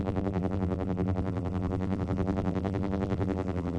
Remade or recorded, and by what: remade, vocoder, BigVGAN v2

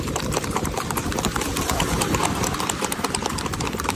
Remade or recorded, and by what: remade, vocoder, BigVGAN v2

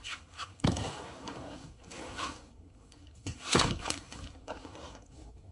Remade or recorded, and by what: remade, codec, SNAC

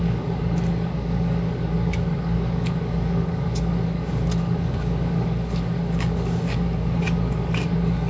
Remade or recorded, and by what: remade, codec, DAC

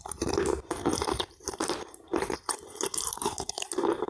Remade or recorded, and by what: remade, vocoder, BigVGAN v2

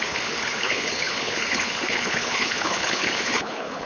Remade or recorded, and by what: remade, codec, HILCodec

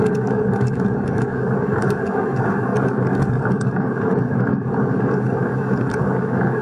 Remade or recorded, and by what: remade, codec, DAC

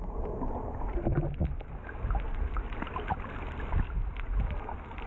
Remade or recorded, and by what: recorded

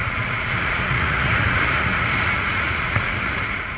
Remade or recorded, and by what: remade, vocoder, Vocos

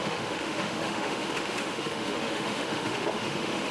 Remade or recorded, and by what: remade, autoencoder, DAC-VAE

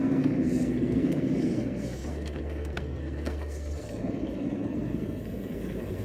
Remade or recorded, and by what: remade, codec, SNAC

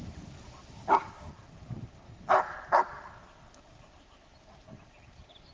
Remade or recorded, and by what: remade, vocoder, BigVGAN v2